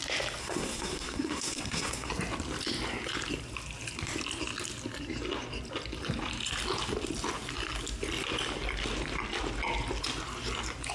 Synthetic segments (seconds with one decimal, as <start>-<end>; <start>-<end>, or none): 0.4-2.1